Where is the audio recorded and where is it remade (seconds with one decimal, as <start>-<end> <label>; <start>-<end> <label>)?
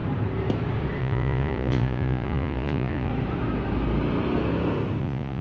0.0-1.0 recorded; 1.0-3.1 remade; 3.1-5.0 recorded; 5.0-5.4 remade